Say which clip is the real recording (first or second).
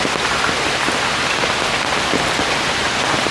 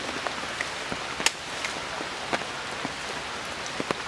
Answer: second